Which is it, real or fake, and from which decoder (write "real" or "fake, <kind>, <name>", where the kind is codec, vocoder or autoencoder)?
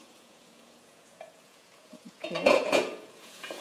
fake, vocoder, Vocos